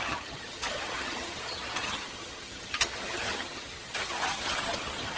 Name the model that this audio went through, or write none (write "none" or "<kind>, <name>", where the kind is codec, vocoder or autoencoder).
vocoder, HiFi-GAN